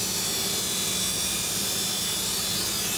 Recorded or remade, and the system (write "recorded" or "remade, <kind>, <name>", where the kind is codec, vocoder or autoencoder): recorded